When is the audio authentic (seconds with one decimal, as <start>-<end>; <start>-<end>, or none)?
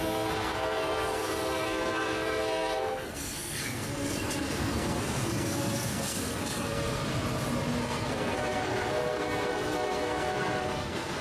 7.0-7.8